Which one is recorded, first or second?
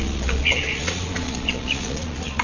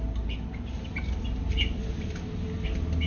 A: second